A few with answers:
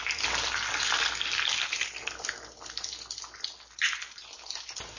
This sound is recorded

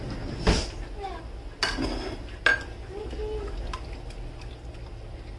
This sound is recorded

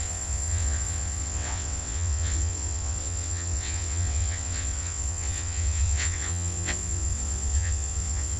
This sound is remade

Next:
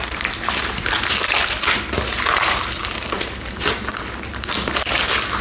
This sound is remade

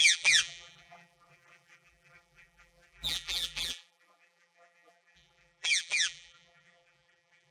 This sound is remade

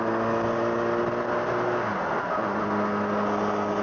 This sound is recorded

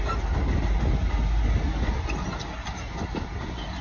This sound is recorded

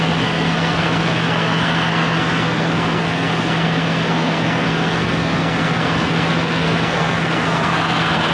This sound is remade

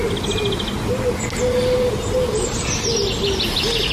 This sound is recorded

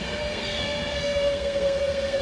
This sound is remade